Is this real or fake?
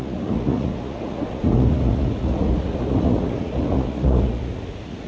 fake